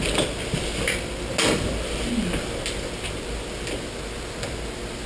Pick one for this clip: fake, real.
real